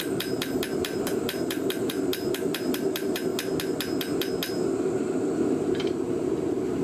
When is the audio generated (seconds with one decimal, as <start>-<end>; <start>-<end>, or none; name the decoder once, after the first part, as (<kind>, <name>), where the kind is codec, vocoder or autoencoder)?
0.0-3.3 (vocoder, BigVGAN v2); 5.5-6.8